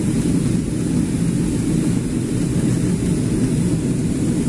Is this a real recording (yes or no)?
yes